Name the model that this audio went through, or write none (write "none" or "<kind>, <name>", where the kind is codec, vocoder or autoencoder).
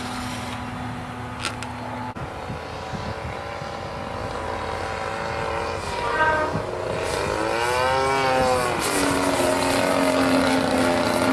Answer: none